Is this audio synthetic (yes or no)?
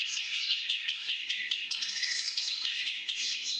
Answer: yes